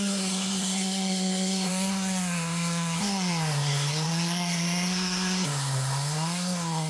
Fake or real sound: fake